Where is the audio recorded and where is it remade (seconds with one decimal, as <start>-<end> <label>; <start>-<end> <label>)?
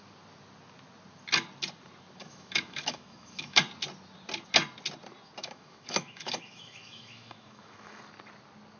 0.0-2.2 recorded; 2.2-3.6 remade; 3.6-5.4 recorded; 5.4-8.0 remade; 8.0-8.8 recorded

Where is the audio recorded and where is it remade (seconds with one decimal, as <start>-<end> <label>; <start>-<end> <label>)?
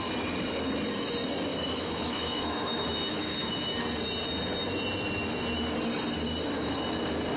0.0-1.5 recorded; 1.5-3.8 remade; 3.8-7.4 recorded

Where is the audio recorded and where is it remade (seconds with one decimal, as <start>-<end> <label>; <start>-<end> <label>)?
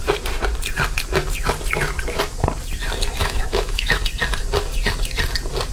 0.0-3.2 recorded; 3.2-4.0 remade; 4.0-5.7 recorded